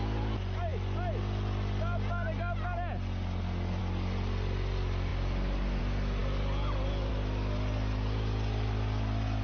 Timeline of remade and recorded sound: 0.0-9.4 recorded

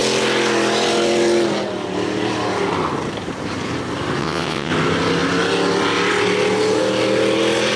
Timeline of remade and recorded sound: 0.0-4.2 recorded; 4.2-4.7 remade; 4.7-7.8 recorded

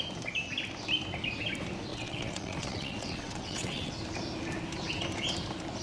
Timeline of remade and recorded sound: 0.0-1.9 recorded; 1.9-3.9 remade; 3.9-5.8 recorded

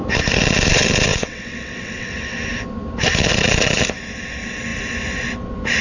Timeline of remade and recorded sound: 0.0-1.1 recorded; 1.1-2.4 remade; 2.4-5.8 recorded

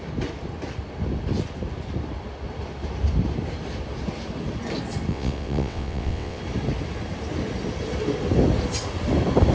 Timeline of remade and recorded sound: 0.0-5.1 recorded; 5.1-6.4 remade; 6.4-9.5 recorded